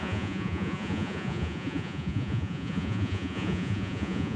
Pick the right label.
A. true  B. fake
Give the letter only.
B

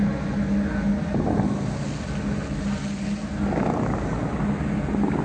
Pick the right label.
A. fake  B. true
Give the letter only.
B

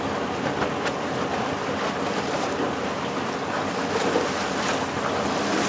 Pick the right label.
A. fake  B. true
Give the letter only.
B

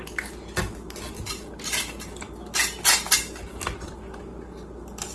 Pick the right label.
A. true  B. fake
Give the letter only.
A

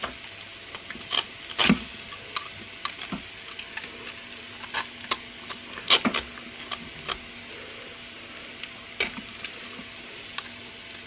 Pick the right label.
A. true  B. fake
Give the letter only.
A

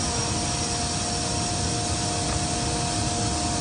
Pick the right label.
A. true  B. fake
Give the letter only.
A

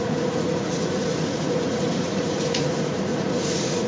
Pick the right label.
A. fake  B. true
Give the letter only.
A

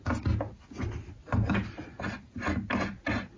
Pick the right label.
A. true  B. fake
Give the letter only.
A